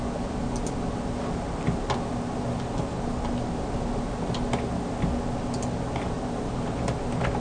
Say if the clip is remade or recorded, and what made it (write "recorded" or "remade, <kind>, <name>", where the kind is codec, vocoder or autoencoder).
recorded